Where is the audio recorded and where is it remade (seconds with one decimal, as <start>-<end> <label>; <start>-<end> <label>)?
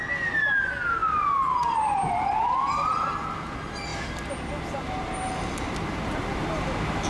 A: 0.0-7.1 recorded